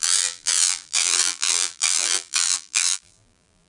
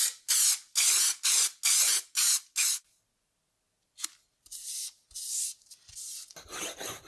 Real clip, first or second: second